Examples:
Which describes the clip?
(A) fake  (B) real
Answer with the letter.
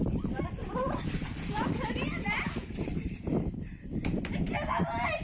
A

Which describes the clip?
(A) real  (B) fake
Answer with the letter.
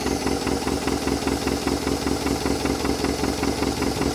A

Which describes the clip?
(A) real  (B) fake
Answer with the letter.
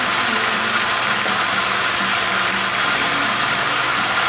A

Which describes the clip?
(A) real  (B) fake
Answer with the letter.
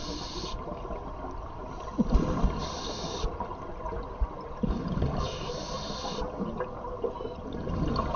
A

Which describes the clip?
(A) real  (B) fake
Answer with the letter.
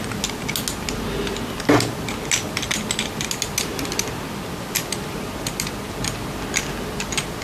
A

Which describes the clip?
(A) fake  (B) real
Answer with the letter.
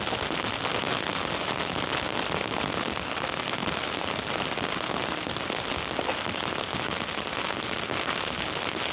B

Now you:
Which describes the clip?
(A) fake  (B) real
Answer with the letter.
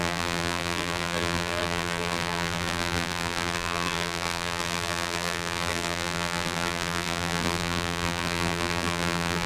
A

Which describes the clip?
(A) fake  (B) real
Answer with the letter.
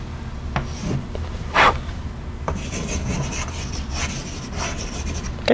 A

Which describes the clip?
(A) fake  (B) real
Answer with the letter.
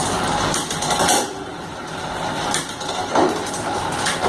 B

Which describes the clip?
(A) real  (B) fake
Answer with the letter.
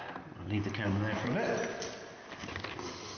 A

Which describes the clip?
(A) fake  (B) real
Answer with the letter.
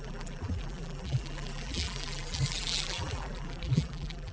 A